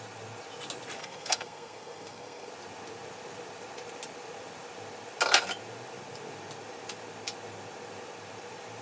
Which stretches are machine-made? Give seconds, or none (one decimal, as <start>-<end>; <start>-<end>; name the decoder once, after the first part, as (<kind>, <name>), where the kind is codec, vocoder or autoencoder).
1.0-2.5 (codec, SNAC)